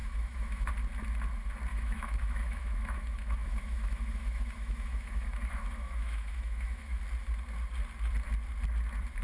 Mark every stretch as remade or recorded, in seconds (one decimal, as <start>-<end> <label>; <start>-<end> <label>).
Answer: 0.0-0.7 remade; 0.7-1.7 recorded; 1.7-7.0 remade; 7.0-9.2 recorded